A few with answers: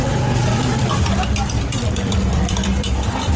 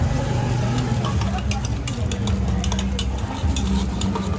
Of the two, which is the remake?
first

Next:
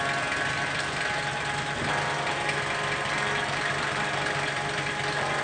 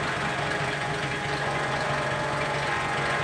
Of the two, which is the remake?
second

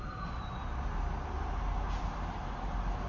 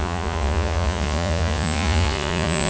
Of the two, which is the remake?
second